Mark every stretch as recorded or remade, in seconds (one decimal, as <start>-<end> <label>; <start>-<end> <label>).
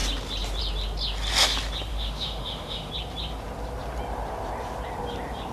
0.0-1.9 recorded; 1.9-2.9 remade; 2.9-5.5 recorded